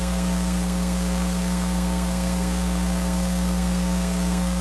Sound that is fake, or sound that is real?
fake